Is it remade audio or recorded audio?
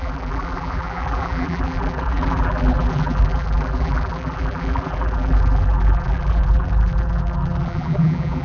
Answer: remade